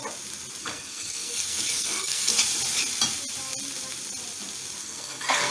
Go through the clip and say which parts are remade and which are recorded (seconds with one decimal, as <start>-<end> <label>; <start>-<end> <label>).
0.0-0.6 recorded; 0.6-2.4 remade; 2.4-4.8 recorded; 4.8-5.5 remade